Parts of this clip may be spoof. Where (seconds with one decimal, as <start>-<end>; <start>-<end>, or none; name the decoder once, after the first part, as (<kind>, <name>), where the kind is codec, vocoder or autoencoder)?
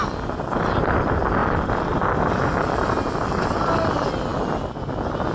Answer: none